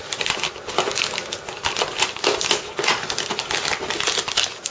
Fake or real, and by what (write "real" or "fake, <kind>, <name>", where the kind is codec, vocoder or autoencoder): real